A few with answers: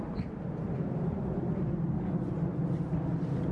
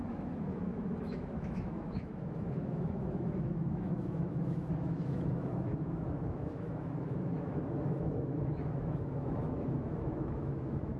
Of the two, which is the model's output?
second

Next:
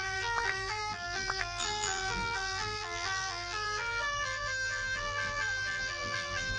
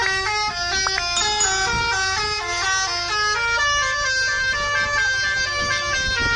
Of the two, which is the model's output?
first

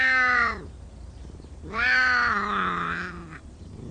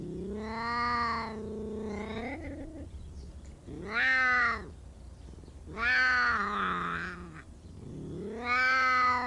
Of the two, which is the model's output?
first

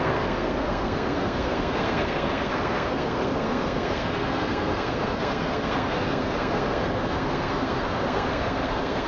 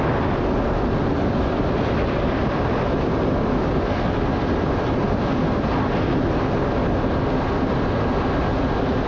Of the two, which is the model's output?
first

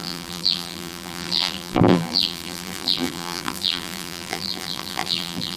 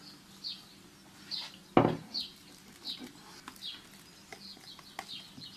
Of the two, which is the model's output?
first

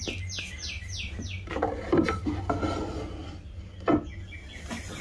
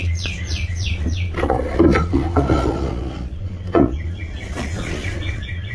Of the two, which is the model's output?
second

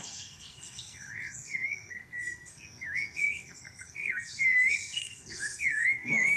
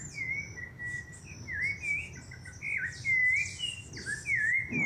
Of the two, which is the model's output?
first